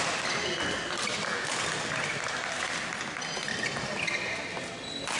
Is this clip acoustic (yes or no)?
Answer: yes